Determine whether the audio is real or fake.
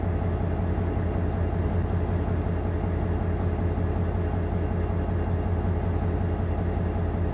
real